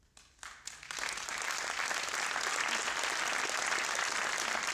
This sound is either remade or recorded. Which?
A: recorded